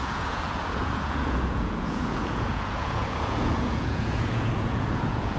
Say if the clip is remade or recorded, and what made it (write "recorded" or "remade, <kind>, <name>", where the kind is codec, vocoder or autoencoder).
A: remade, vocoder, Vocos